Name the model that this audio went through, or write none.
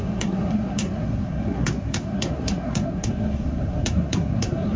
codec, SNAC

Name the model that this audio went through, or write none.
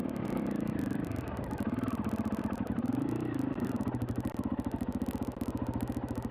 vocoder, BigVGAN v2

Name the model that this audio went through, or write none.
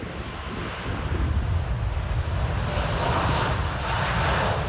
vocoder, BigVGAN v2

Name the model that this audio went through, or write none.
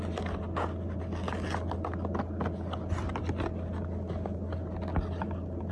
none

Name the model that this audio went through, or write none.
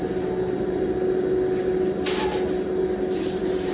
none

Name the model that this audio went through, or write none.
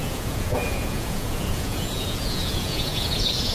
vocoder, Vocos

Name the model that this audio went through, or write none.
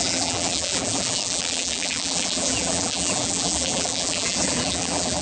vocoder, BigVGAN v2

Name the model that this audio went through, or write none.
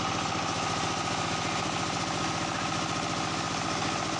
none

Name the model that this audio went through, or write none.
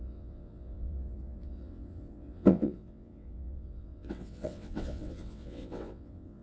vocoder, WaveNeXt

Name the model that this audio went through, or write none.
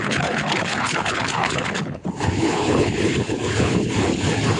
codec, HILCodec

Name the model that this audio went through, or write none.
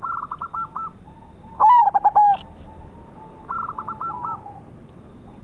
none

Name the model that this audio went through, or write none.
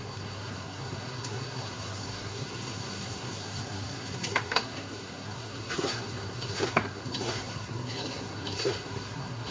codec, SNAC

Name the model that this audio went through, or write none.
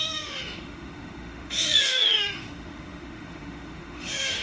autoencoder, DAC-VAE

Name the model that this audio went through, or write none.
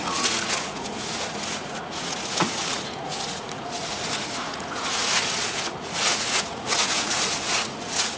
vocoder, Vocos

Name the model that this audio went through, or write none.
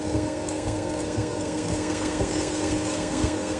codec, SNAC